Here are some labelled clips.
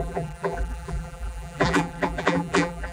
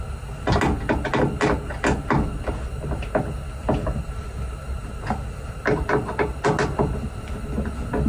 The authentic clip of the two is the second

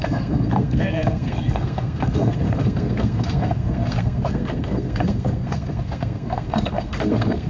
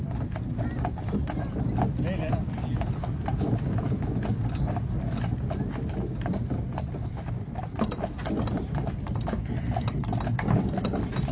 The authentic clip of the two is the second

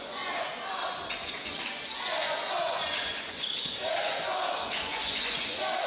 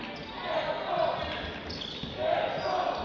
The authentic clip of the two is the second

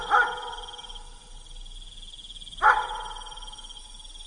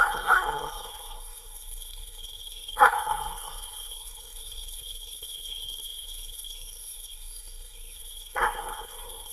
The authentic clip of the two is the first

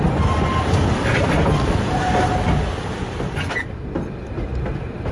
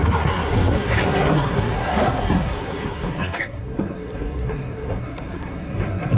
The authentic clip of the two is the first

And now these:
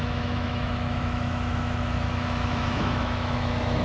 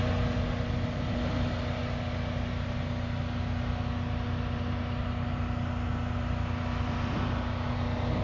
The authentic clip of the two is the second